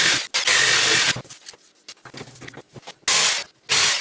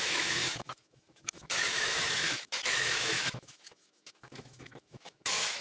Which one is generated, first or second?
second